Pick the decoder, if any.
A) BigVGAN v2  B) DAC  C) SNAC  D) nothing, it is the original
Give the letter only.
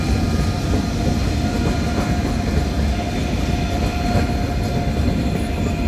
D